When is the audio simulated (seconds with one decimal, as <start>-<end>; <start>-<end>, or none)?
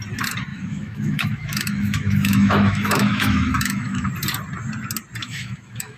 0.5-4.1; 5.2-6.0